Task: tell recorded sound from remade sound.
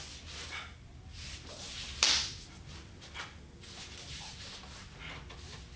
recorded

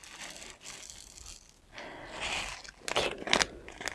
recorded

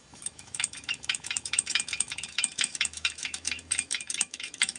remade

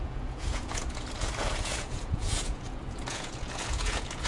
remade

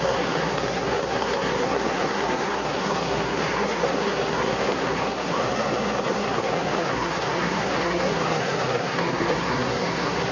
remade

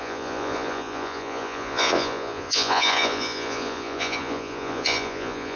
remade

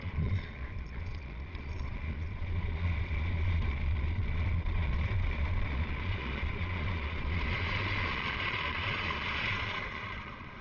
remade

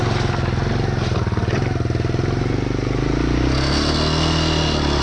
recorded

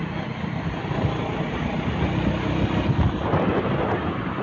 recorded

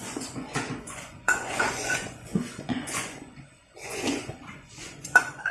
remade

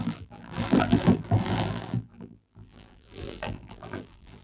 remade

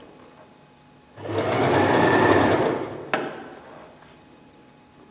recorded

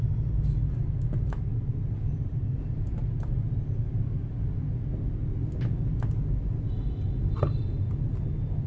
recorded